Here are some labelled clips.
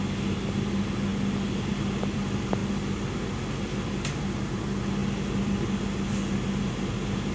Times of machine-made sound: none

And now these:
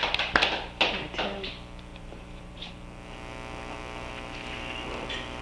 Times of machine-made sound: 1.9-2.7 (vocoder, BigVGAN v2)

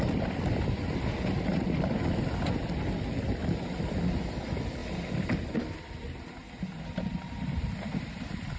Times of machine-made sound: none